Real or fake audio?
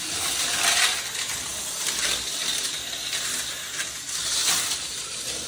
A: real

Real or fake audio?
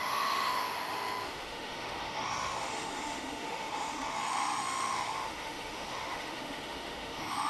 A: fake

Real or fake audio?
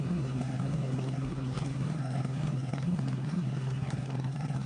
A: fake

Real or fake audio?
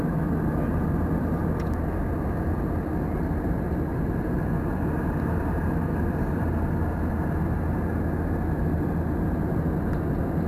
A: real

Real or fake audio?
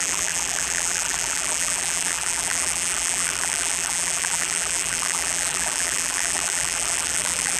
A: fake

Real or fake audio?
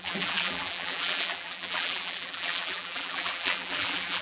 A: fake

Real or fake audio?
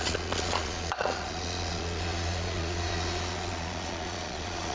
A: fake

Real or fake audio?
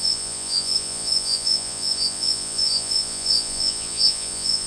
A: fake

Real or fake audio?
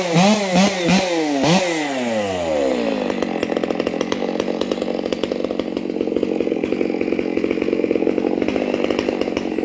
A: real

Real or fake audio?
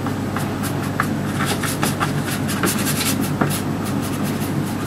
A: real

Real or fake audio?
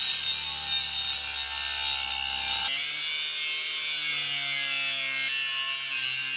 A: real